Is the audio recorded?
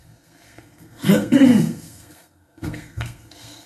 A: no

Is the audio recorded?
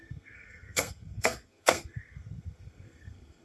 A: no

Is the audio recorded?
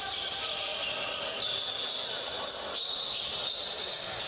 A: yes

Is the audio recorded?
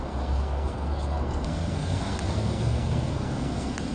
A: no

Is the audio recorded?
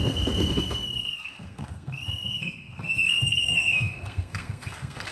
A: no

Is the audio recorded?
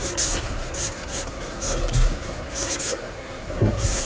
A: no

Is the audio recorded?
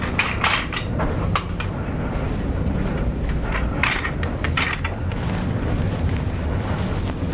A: yes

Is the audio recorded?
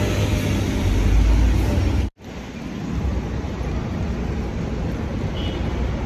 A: yes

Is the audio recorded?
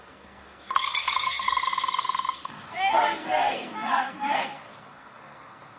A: no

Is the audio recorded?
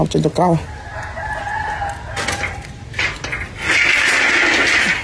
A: yes